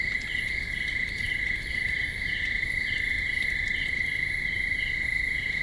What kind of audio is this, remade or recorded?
recorded